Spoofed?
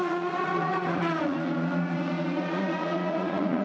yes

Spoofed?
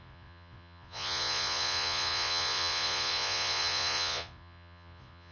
yes